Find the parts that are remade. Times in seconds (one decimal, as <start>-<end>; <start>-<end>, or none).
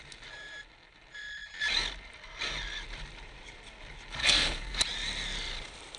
4.2-4.8